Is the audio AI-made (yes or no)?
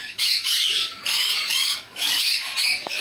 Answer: yes